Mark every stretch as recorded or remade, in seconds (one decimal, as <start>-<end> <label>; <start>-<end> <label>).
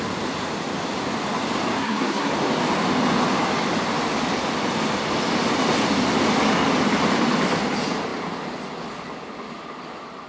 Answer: 0.0-1.8 recorded; 1.8-2.3 remade; 2.3-10.3 recorded